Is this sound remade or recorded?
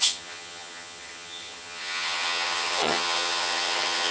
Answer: remade